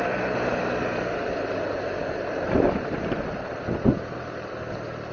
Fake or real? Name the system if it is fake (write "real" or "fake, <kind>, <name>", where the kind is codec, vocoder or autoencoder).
real